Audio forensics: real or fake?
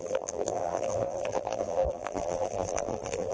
fake